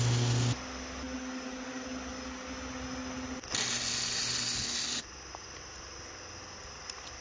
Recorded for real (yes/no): yes